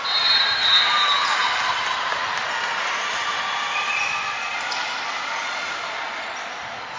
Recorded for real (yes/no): yes